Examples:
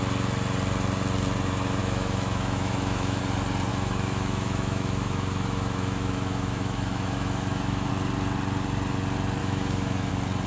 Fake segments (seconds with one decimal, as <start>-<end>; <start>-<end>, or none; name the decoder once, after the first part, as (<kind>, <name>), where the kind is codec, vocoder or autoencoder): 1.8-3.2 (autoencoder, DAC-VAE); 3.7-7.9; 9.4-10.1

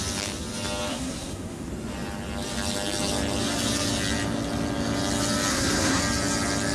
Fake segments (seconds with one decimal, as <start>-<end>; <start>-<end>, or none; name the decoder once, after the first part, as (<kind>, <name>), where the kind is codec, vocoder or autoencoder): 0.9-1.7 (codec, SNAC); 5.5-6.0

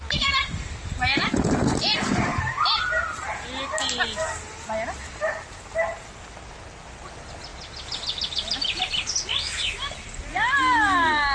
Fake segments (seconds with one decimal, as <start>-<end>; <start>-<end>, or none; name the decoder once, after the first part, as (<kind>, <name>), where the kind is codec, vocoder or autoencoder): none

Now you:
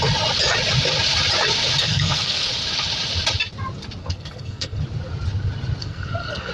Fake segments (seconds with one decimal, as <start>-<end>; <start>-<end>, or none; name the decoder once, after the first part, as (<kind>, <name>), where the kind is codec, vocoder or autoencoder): 1.8-2.5 (codec, SNAC); 4.0-4.8; 5.8-6.5

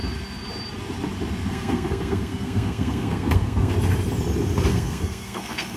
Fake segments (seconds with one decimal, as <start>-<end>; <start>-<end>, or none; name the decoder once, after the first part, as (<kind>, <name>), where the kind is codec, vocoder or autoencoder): 1.5-3.7 (codec, SNAC); 4.7-5.8

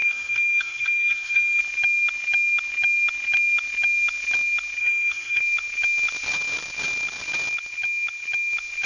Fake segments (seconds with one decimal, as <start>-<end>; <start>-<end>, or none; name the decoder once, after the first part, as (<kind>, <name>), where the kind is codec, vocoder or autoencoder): 0.0-1.6 (codec, SNAC); 4.8-5.4

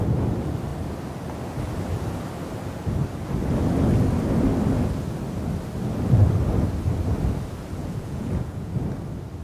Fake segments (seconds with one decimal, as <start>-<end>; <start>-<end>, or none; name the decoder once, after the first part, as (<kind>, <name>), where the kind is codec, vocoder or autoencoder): 7.8-8.7 (vocoder, Vocos)